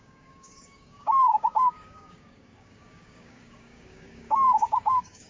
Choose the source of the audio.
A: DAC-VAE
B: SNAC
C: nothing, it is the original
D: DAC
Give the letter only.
D